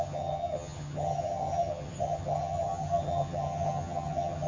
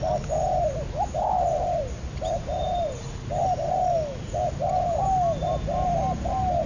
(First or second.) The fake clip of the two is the first